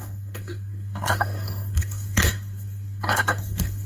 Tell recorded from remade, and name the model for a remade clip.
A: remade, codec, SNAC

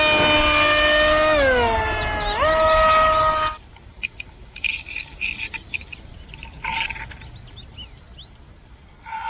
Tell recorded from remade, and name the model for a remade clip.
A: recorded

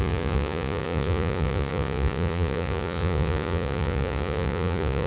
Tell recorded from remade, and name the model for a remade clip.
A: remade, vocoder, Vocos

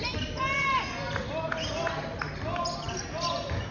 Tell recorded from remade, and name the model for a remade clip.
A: recorded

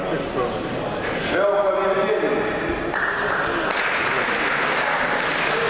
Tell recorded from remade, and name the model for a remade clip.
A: recorded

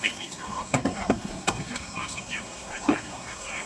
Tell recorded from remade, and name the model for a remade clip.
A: remade, codec, SNAC